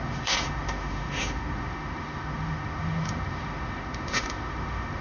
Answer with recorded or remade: remade